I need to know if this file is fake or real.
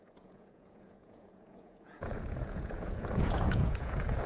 fake